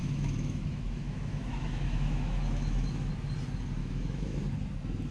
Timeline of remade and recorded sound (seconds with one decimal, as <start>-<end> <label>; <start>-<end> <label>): 0.0-3.1 remade; 3.1-3.8 recorded; 3.8-4.4 remade; 4.4-5.1 recorded